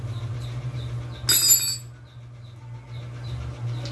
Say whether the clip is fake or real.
real